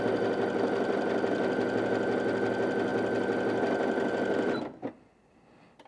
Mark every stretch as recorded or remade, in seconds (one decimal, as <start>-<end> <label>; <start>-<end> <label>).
0.0-5.9 recorded